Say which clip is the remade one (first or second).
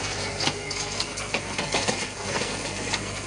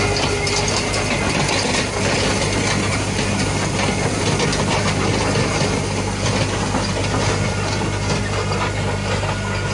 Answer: first